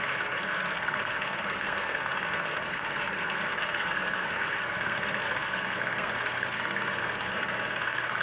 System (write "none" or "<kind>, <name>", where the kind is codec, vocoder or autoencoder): codec, SNAC